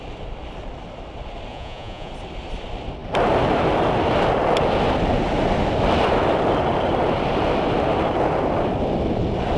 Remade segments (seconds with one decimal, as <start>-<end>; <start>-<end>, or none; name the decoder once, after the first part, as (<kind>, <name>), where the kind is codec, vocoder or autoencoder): 1.5-2.1 (vocoder, Vocos)